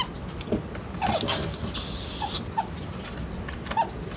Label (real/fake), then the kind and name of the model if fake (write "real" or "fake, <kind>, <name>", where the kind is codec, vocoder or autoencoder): real